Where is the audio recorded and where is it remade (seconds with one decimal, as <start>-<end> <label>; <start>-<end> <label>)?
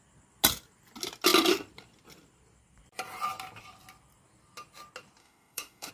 0.0-5.2 recorded; 5.2-5.9 remade